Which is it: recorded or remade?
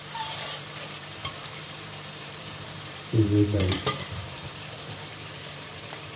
remade